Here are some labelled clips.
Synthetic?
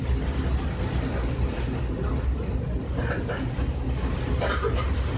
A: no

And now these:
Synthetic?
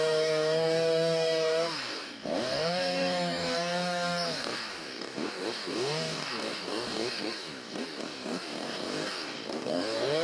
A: yes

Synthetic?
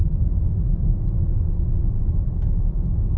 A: no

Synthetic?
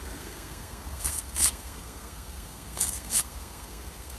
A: yes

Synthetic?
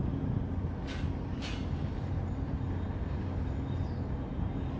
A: no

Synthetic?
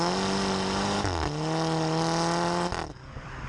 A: no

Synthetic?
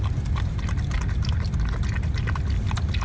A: no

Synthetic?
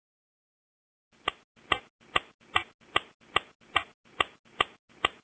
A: no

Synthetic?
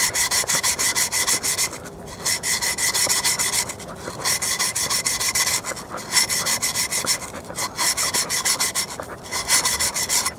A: no